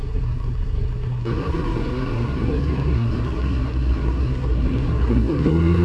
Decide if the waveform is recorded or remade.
remade